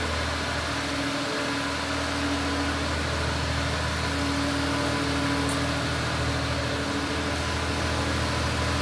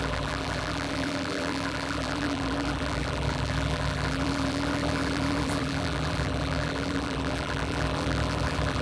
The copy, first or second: second